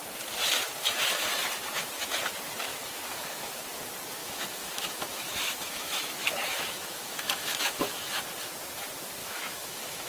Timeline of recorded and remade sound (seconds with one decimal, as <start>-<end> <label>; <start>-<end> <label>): 0.0-2.7 recorded; 2.7-3.5 remade; 3.5-4.2 recorded; 4.2-8.2 remade; 8.2-9.2 recorded; 9.2-10.1 remade